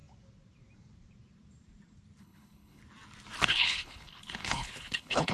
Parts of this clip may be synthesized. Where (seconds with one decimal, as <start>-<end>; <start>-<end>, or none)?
2.2-2.8; 3.5-5.3